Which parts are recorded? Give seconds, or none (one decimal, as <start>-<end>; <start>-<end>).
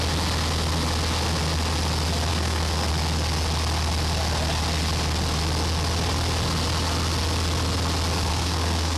0.0-2.3; 2.9-8.3